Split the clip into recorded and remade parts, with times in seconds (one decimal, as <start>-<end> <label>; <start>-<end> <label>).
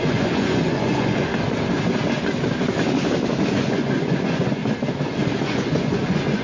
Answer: 0.0-1.3 remade; 1.3-3.5 recorded; 3.5-4.6 remade; 4.6-5.4 recorded; 5.4-6.4 remade